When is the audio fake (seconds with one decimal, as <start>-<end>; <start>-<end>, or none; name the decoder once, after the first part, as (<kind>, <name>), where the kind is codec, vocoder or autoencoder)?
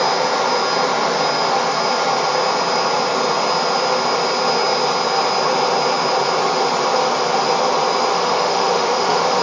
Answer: 8.1-9.4 (autoencoder, DAC-VAE)